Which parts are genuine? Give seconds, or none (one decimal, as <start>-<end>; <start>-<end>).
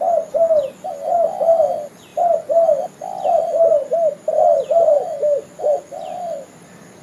0.0-7.0